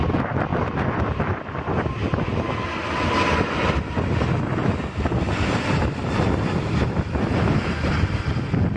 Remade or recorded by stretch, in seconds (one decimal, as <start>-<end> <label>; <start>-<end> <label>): 0.0-8.8 recorded